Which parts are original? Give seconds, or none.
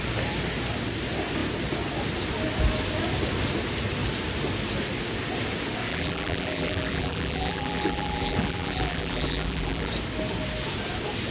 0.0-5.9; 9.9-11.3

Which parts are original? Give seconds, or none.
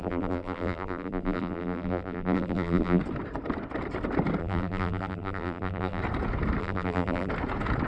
3.0-4.4; 6.0-6.6; 7.3-7.9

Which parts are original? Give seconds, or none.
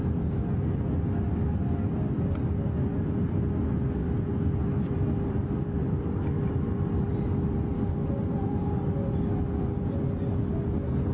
0.0-4.0; 7.9-11.1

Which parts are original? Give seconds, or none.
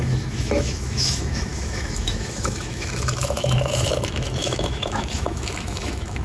none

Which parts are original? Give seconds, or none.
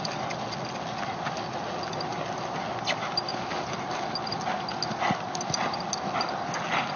0.0-7.0